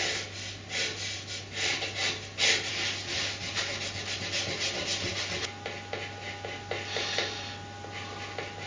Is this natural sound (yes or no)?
yes